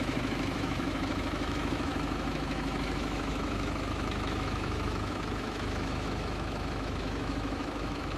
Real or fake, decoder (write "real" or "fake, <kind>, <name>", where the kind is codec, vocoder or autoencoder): fake, autoencoder, DAC-VAE